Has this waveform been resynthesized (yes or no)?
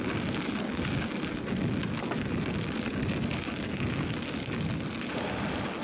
no